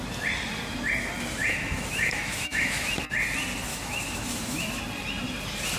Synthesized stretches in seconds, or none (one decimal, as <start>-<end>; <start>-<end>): 1.4-3.0; 3.7-4.8

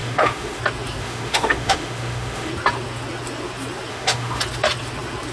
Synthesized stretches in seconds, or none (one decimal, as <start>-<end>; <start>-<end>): 0.0-0.6; 1.0-2.5; 3.9-4.4

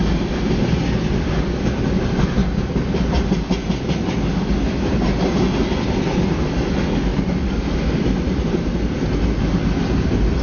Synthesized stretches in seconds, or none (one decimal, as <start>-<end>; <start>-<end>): none